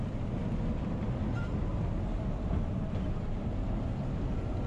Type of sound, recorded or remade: recorded